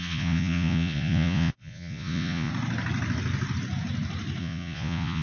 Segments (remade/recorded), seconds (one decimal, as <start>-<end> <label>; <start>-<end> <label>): 0.0-2.5 remade; 2.5-4.4 recorded; 4.4-5.2 remade